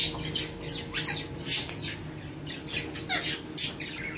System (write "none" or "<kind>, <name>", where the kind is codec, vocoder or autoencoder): none